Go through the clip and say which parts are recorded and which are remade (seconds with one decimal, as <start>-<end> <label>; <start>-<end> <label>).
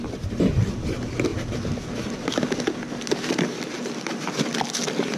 0.0-5.2 recorded